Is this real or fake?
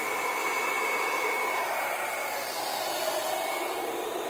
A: real